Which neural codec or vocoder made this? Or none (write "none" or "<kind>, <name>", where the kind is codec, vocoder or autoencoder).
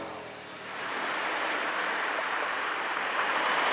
none